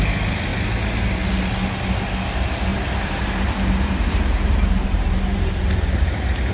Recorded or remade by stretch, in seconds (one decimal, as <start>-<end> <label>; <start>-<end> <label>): 0.0-2.7 recorded; 2.7-6.5 remade